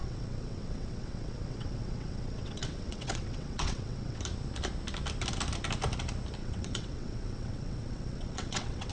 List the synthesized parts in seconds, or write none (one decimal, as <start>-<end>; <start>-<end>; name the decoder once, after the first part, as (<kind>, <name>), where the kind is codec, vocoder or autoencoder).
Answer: 0.0-4.2 (vocoder, WaveNeXt); 6.4-8.9